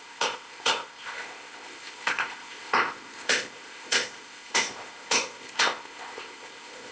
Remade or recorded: remade